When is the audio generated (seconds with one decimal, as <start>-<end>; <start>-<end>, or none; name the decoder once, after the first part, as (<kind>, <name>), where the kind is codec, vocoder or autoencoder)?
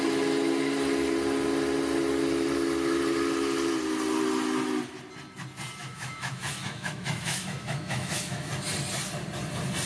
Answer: 5.8-8.5 (autoencoder, DAC-VAE)